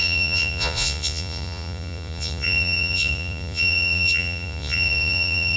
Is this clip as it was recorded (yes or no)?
no